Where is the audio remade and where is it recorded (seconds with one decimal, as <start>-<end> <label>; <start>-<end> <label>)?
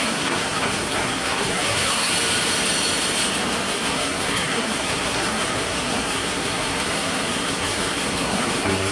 0.0-2.1 remade; 2.1-3.7 recorded; 3.7-8.9 remade